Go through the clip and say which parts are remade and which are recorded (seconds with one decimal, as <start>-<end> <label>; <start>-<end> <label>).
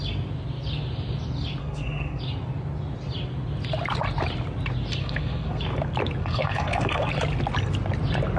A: 0.0-1.6 recorded; 1.6-2.2 remade; 2.2-5.0 recorded; 5.0-5.6 remade; 5.6-6.2 recorded; 6.2-7.1 remade; 7.1-8.4 recorded